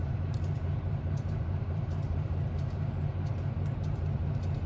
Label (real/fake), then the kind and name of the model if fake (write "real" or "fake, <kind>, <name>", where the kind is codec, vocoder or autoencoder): fake, vocoder, BigVGAN v2